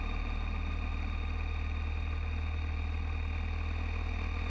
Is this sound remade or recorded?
recorded